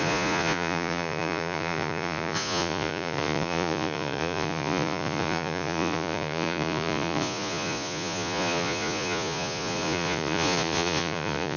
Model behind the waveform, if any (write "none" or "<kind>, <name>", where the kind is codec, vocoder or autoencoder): vocoder, Vocos